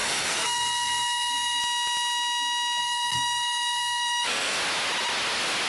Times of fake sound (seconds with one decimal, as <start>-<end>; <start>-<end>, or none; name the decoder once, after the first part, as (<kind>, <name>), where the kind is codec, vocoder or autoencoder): 0.0-1.6 (codec, SNAC); 2.8-4.6